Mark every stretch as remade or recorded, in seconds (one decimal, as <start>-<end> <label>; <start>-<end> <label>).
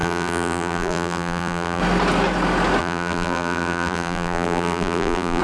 0.0-1.8 remade; 1.8-2.8 recorded; 2.8-5.4 remade